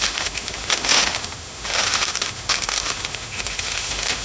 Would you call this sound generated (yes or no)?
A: yes